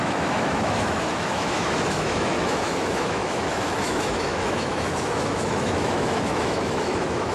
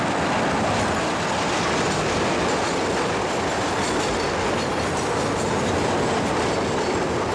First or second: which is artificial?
first